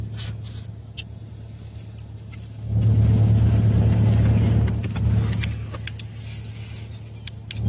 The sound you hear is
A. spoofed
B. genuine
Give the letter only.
B